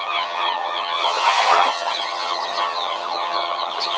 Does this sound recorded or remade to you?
remade